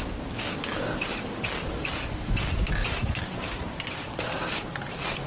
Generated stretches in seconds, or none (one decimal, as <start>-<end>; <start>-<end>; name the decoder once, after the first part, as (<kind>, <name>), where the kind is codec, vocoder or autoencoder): 2.8-4.4 (vocoder, BigVGAN v2)